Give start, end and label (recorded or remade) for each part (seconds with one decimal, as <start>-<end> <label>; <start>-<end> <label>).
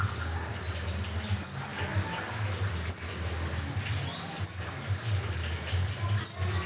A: 0.0-6.7 recorded